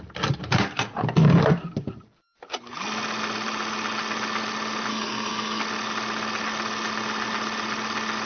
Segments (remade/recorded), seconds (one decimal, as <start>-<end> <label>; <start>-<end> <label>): 0.0-4.9 recorded; 4.9-5.6 remade; 5.6-8.3 recorded